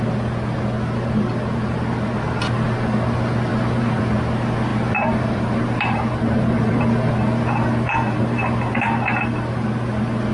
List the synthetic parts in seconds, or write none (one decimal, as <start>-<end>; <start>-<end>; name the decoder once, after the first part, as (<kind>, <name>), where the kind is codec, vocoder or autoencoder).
3.5-4.0 (vocoder, BigVGAN v2); 4.7-6.7